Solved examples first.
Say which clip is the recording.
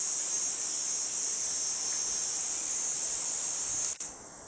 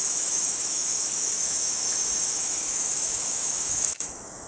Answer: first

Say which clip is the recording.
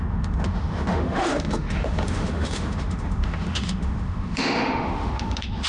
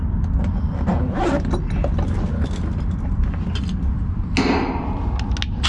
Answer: second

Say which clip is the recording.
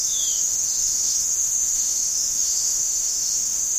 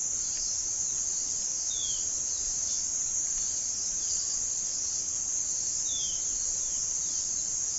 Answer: second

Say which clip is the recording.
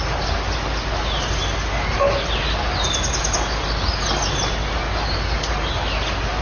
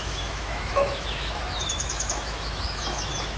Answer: first